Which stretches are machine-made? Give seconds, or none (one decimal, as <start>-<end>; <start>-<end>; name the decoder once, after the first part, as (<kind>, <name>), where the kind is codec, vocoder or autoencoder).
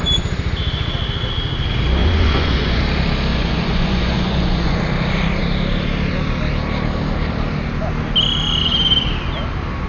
2.0-2.8 (vocoder, Vocos); 3.3-4.8